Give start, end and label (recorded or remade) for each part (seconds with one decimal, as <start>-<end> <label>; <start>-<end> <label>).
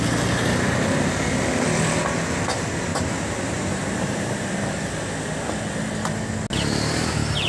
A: 0.0-2.9 recorded; 2.9-4.4 remade; 4.4-7.5 recorded